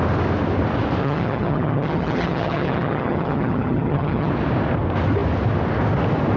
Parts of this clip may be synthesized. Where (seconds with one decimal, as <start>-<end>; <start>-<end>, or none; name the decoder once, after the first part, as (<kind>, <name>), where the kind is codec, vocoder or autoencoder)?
1.0-4.3 (vocoder, HiFi-GAN)